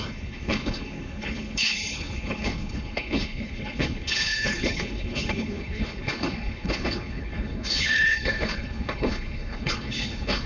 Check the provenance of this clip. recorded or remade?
remade